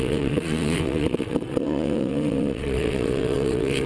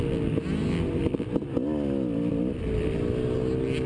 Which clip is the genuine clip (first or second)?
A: second